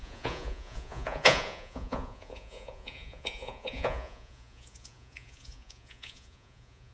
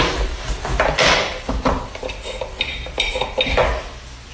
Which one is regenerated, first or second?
first